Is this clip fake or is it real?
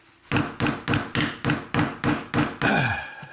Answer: real